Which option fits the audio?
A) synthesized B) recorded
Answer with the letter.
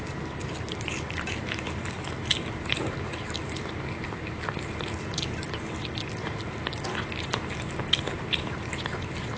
B